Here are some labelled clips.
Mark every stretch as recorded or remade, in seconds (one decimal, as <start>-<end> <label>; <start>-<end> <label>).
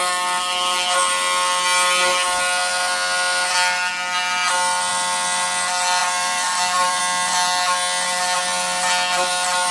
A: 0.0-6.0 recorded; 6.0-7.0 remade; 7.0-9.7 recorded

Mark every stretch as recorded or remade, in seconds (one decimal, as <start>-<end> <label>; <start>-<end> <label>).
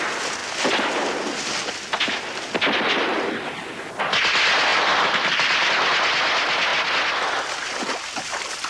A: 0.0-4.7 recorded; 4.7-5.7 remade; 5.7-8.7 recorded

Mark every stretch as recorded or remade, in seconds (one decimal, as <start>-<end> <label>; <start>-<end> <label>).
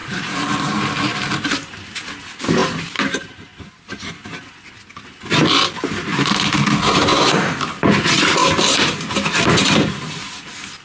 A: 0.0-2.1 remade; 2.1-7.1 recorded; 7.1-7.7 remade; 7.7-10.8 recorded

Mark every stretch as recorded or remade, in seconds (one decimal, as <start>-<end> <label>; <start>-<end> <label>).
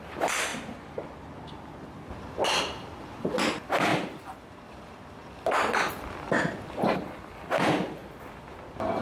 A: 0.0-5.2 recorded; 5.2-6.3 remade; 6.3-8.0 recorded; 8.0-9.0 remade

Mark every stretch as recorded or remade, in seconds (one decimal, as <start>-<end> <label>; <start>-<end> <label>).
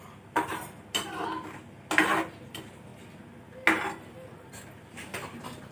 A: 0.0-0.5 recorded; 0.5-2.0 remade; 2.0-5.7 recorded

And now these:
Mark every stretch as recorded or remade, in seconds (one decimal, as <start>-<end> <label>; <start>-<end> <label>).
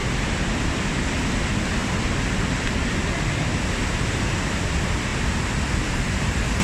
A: 0.0-0.8 remade; 0.8-6.6 recorded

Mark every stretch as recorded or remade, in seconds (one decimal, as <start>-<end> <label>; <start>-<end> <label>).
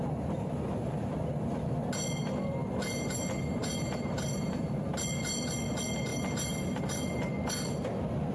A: 0.0-2.6 recorded; 2.6-4.7 remade; 4.7-6.1 recorded; 6.1-7.5 remade; 7.5-8.3 recorded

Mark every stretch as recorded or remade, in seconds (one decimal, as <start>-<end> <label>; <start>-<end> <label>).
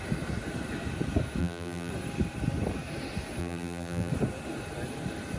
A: 0.0-1.4 recorded; 1.4-1.9 remade; 1.9-3.4 recorded; 3.4-4.1 remade; 4.1-5.4 recorded